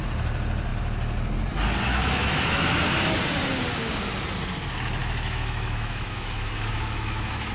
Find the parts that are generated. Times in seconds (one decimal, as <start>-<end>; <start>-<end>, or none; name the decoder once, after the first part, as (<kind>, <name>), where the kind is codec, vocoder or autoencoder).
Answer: 1.9-2.4 (autoencoder, DAC-VAE); 5.0-7.5